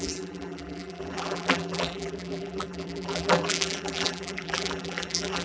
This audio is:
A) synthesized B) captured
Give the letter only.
A